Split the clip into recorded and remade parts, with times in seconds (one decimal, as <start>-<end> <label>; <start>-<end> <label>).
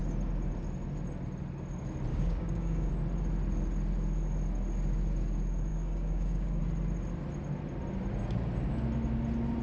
0.0-2.1 recorded; 2.1-2.9 remade; 2.9-5.7 recorded; 5.7-6.6 remade; 6.6-9.6 recorded